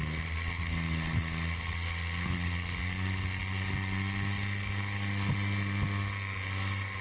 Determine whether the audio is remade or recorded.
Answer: recorded